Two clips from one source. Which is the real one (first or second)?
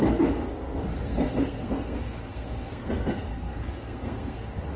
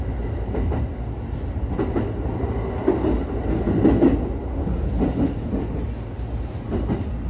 second